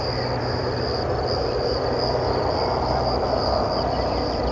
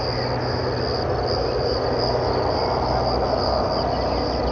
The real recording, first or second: second